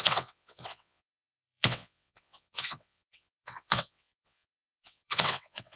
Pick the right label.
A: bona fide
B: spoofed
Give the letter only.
B